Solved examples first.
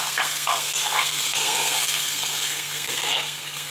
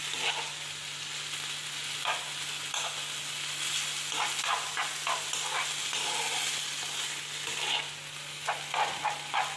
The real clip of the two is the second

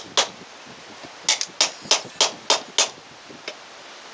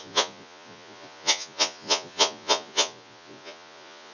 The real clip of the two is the first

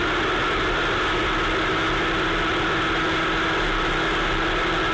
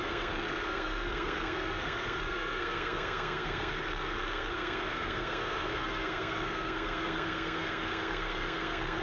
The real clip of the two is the first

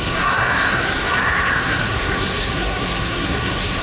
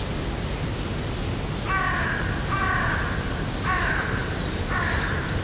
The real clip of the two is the second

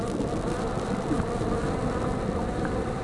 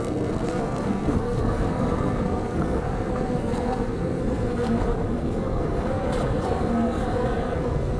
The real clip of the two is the first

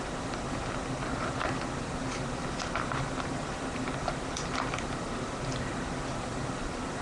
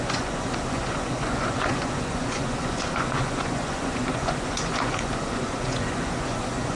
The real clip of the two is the first